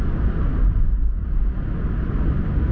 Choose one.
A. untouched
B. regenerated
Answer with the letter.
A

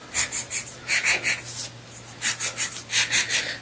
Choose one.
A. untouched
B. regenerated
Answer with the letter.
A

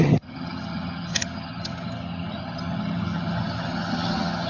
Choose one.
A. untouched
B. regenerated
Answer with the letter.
B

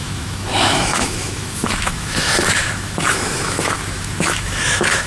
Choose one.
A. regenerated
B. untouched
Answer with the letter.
A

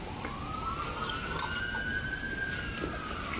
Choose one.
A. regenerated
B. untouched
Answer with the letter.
B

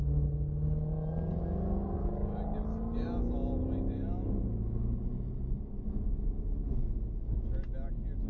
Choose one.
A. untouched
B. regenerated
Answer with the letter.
A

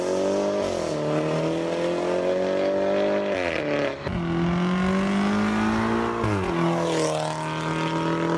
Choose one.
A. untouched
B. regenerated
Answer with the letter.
A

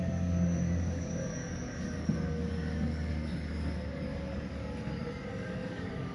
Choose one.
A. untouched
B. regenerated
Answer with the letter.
B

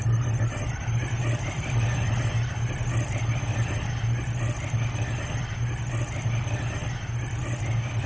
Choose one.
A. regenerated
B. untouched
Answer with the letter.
B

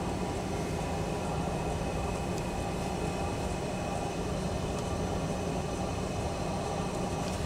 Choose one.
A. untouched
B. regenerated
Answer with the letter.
A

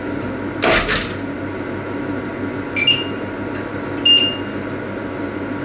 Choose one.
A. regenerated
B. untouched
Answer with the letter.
B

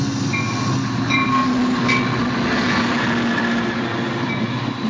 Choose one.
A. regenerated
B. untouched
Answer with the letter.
B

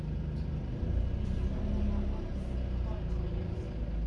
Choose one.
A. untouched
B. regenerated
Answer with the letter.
A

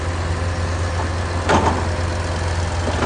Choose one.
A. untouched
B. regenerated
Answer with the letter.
A